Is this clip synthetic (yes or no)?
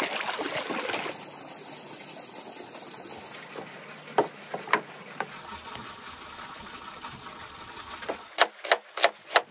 no